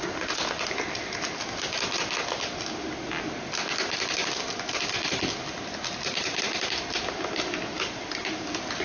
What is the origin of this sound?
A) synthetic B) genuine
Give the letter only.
B